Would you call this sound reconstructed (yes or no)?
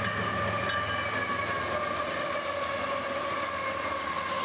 no